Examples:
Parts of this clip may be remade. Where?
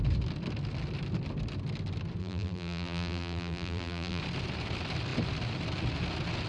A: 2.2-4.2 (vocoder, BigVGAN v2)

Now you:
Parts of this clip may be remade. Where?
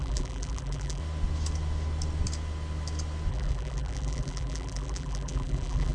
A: 0.0-1.0 (vocoder, BigVGAN v2); 3.3-5.9